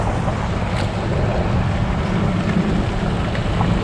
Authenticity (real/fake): real